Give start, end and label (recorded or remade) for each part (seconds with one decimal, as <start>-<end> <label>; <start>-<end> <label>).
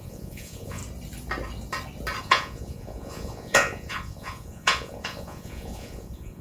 0.0-0.8 remade; 0.8-2.2 recorded; 2.2-6.4 remade